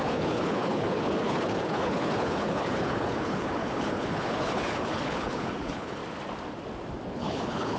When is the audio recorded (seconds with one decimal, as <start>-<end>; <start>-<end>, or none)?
6.0-7.1